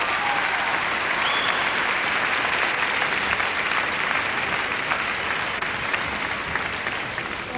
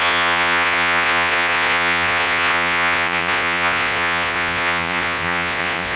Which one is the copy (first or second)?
second